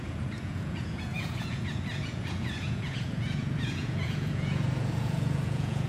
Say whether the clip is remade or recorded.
remade